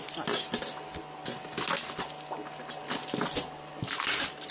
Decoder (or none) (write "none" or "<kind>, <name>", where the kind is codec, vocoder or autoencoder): none